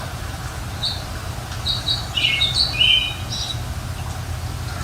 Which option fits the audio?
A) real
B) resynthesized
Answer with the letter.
A